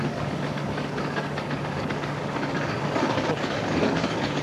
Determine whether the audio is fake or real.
fake